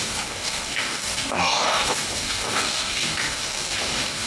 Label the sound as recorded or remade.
remade